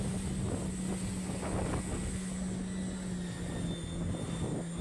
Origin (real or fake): real